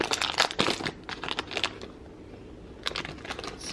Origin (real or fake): real